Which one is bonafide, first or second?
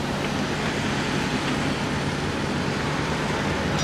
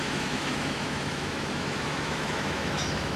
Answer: first